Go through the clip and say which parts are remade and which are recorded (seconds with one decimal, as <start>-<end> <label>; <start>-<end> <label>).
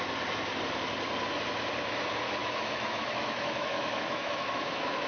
0.0-2.4 recorded; 2.4-5.1 remade